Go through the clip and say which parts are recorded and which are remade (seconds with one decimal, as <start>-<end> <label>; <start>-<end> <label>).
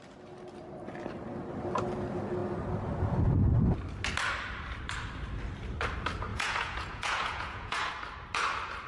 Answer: 0.0-6.3 recorded; 6.3-7.9 remade; 7.9-8.9 recorded